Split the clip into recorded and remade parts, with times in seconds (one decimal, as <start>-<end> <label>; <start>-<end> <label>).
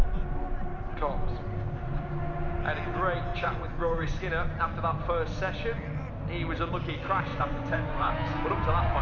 0.0-3.3 recorded; 3.3-4.2 remade; 4.2-7.3 recorded; 7.3-8.1 remade; 8.1-9.0 recorded